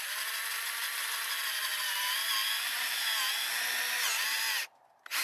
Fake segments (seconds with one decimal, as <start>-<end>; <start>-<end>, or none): none